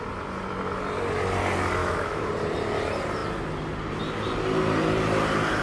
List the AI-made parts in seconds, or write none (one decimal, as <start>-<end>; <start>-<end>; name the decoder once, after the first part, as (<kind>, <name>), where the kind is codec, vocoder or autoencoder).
1.8-2.3 (autoencoder, DAC-VAE)

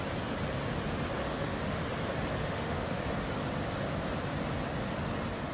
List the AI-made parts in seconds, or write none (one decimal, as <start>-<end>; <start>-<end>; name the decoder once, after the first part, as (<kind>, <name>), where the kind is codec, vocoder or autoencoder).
1.2-1.8 (autoencoder, DAC-VAE); 2.4-3.0